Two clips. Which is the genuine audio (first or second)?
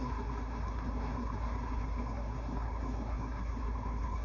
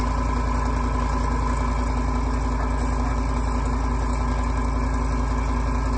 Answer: second